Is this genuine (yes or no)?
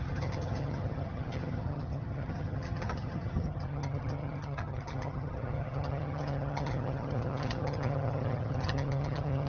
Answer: no